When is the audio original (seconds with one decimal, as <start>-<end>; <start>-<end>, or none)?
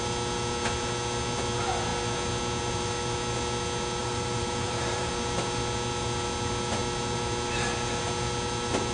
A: 0.0-4.0; 5.1-8.9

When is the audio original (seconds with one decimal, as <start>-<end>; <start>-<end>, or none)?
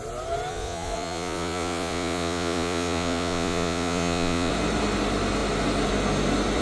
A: 0.0-0.5; 4.5-6.6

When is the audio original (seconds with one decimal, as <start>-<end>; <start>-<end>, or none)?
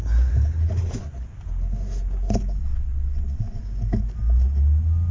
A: 0.0-2.6; 3.6-5.1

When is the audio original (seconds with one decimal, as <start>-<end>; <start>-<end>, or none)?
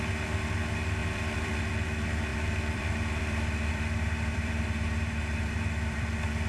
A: 0.0-1.0; 1.6-2.3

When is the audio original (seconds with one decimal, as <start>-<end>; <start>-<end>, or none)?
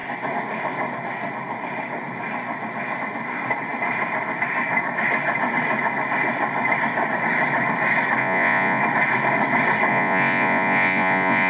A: 0.0-8.2; 8.8-9.9